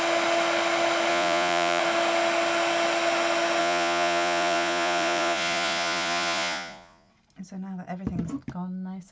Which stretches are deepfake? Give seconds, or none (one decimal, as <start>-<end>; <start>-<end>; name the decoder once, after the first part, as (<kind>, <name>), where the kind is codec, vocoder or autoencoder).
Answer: 1.1-1.8 (vocoder, Vocos); 3.6-7.1